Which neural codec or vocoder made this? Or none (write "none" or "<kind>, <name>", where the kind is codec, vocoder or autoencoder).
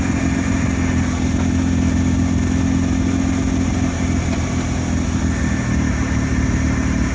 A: none